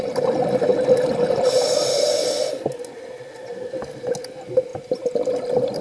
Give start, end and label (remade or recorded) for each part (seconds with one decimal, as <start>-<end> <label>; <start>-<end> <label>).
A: 0.0-5.8 recorded